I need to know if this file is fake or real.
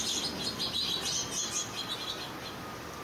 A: real